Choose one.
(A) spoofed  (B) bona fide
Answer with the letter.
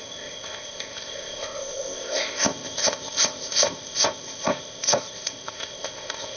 A